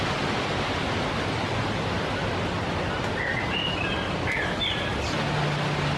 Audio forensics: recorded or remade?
recorded